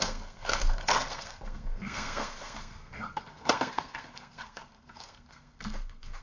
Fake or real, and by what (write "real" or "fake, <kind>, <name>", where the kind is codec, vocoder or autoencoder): fake, codec, SNAC